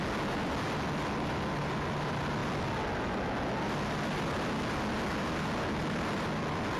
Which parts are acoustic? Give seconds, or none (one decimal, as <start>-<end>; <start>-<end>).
0.0-6.8